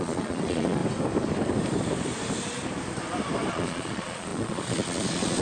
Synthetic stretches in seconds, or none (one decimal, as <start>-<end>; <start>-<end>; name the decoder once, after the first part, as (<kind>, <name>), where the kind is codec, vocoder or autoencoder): 0.0-0.8 (vocoder, Vocos); 3.5-5.4